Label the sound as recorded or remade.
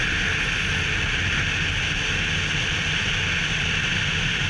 recorded